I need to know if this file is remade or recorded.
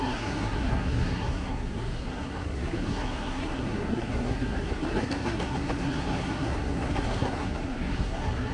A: remade